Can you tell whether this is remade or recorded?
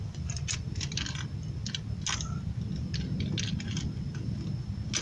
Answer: recorded